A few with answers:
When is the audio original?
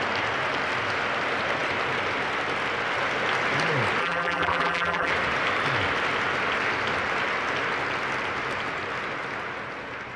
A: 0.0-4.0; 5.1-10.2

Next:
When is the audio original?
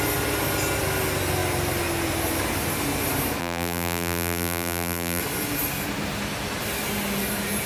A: 0.0-3.4; 5.2-7.7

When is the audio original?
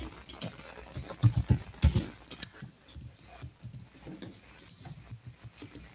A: 0.0-5.9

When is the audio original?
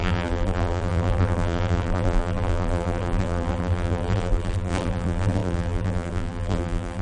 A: none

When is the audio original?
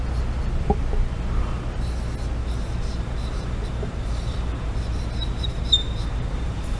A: 0.0-2.4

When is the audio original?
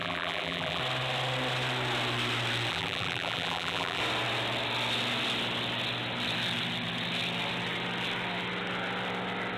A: 0.8-2.7; 4.0-9.6